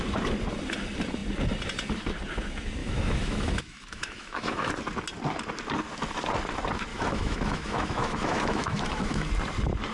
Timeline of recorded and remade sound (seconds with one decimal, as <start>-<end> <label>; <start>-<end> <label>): 0.0-2.8 recorded; 2.8-4.7 remade; 4.7-6.9 recorded; 6.9-9.3 remade; 9.3-9.9 recorded